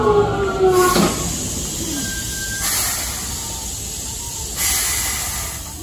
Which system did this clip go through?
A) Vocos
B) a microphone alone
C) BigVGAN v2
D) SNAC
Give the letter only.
B